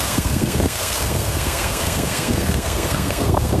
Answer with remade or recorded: remade